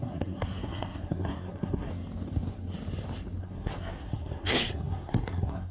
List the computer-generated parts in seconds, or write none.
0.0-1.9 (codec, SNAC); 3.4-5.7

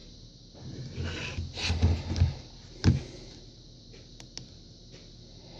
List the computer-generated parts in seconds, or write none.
none

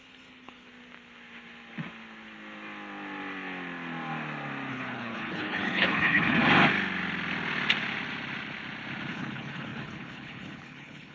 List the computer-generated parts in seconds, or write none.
0.0-0.7 (codec, HILCodec); 4.7-6.4; 9.1-11.1

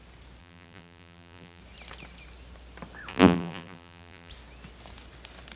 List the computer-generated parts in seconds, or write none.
0.4-1.6 (vocoder, BigVGAN v2); 3.1-4.3

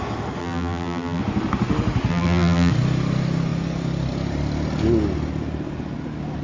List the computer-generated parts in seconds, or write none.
0.4-1.2 (vocoder, BigVGAN v2); 2.1-2.7